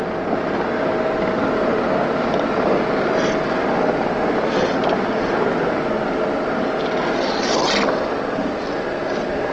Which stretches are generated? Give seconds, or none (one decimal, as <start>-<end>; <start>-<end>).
none